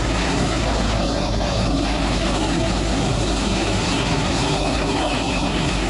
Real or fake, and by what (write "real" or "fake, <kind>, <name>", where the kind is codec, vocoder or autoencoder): fake, codec, SNAC